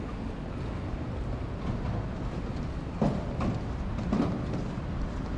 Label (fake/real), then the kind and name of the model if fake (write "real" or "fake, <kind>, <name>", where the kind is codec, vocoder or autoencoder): real